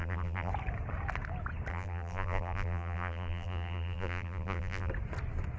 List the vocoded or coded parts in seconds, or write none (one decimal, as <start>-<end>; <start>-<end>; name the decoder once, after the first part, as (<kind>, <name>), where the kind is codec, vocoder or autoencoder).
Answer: 0.0-0.5 (vocoder, BigVGAN v2); 1.7-4.9